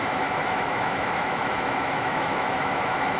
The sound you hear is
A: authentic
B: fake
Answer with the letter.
B